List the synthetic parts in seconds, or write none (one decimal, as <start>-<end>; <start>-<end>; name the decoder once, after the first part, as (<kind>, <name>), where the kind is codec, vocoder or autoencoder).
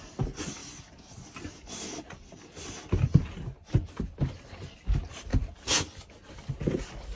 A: none